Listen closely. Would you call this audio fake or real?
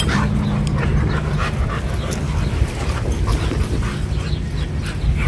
real